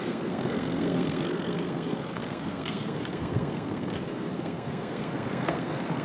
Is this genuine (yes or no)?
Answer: no